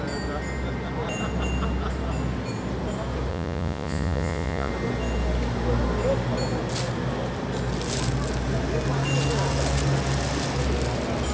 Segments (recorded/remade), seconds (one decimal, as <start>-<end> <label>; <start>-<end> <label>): 0.0-3.3 recorded; 3.3-4.7 remade; 4.7-11.3 recorded